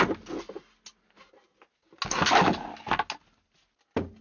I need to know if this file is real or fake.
real